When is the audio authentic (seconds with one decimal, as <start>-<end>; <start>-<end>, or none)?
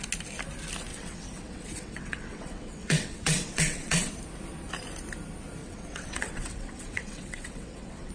0.0-0.9; 4.1-5.6